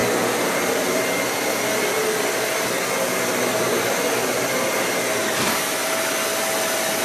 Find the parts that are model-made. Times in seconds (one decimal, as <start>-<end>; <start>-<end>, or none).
none